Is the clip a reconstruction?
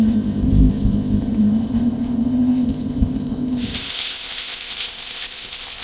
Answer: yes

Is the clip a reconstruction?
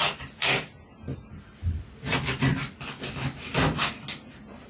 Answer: no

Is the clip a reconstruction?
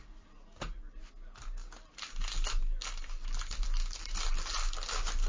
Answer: no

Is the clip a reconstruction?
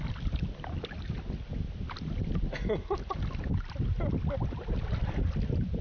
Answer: no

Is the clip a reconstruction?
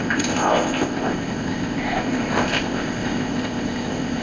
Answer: yes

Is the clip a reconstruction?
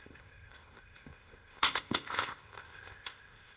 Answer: yes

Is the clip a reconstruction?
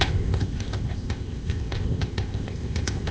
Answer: yes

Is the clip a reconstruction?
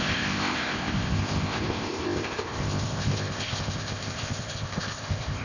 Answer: yes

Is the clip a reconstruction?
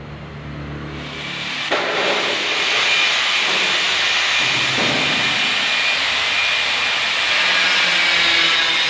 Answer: no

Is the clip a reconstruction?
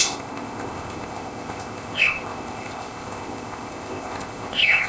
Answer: yes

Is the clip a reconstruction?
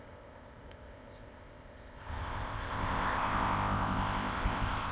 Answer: yes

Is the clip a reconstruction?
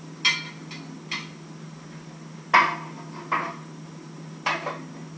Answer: no